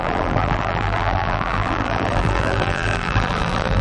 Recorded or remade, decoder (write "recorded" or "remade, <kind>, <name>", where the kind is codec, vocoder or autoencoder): remade, vocoder, BigVGAN v2